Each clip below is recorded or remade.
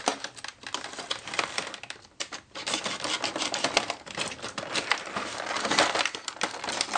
remade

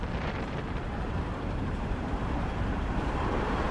remade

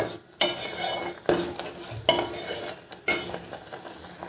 recorded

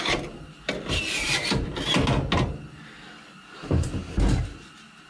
recorded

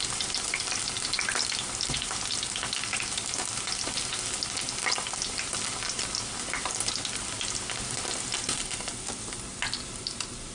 recorded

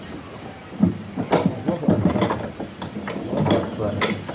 remade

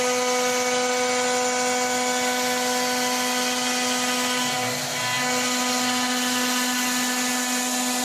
recorded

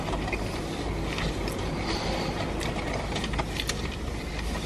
recorded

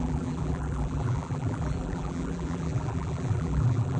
remade